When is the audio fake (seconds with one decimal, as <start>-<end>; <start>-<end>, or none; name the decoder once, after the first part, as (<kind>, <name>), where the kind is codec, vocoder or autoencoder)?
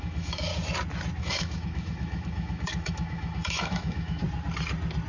0.0-0.5 (autoencoder, DAC-VAE); 1.2-4.2